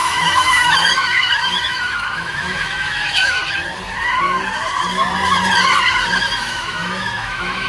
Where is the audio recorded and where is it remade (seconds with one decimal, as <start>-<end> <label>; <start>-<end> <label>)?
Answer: 0.0-3.4 remade; 3.4-6.2 recorded; 6.2-7.7 remade